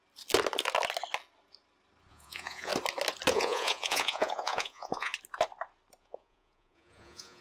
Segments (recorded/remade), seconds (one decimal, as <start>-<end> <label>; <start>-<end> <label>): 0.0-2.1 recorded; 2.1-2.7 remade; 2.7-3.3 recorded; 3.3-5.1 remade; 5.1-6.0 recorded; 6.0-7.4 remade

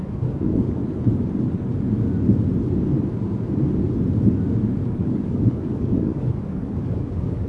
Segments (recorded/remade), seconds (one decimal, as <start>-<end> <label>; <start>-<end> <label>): 0.0-0.8 remade; 0.8-4.9 recorded; 4.9-7.5 remade

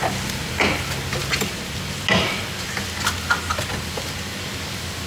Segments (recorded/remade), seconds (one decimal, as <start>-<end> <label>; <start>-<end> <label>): 0.0-5.1 recorded

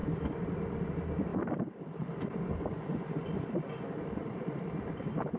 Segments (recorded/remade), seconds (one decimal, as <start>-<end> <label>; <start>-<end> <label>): 0.0-1.3 remade; 1.3-4.0 recorded; 4.0-5.4 remade

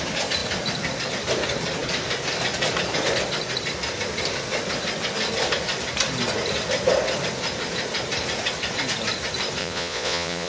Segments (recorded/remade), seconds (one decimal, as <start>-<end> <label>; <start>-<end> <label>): 0.0-9.6 recorded; 9.6-10.5 remade

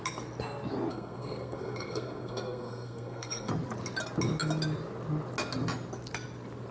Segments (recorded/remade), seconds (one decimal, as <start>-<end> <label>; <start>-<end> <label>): 0.0-0.9 recorded; 0.9-3.5 remade; 3.5-6.7 recorded